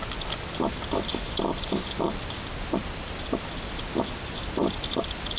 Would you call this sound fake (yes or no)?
no